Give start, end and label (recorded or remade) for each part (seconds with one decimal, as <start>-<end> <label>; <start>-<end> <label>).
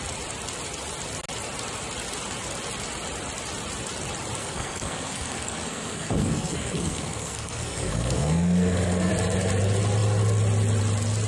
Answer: 0.0-4.4 recorded; 4.4-9.1 remade; 9.1-11.3 recorded